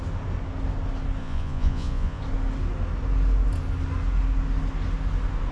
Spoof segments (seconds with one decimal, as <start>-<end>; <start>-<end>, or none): 1.2-2.2